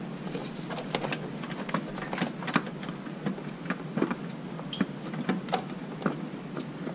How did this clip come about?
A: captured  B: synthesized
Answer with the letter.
A